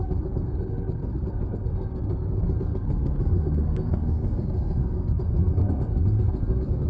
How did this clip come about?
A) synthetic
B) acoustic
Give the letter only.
A